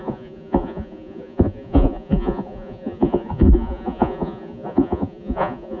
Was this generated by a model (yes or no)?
yes